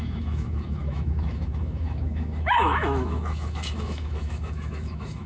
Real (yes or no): no